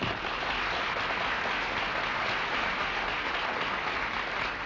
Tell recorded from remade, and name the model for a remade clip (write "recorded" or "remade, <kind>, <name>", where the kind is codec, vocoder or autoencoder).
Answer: recorded